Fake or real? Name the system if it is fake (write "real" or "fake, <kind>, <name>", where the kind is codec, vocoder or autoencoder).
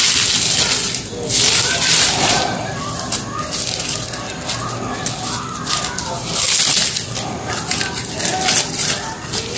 real